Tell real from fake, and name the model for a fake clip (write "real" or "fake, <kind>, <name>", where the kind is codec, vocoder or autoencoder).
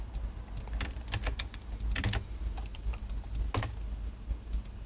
real